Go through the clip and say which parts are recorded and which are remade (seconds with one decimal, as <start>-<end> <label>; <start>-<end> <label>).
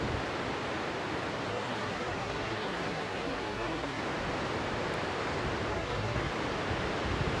0.0-1.5 recorded; 1.5-4.0 remade; 4.0-5.7 recorded; 5.7-6.3 remade; 6.3-7.4 recorded